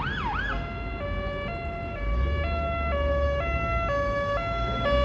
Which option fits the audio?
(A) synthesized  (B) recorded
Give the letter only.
B